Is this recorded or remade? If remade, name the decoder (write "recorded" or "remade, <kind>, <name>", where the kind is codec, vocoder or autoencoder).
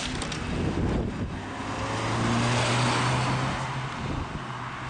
recorded